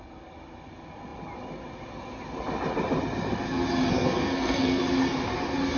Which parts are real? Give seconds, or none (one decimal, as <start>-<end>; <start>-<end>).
0.0-3.9; 4.8-5.8